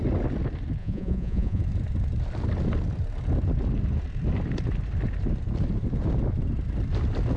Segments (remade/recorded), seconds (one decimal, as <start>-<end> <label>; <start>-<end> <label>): 0.0-0.8 recorded; 0.8-1.6 remade; 1.6-7.4 recorded